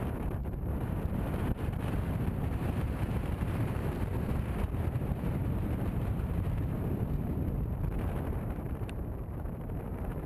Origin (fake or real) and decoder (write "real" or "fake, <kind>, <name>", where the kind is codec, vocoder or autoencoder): fake, vocoder, BigVGAN v2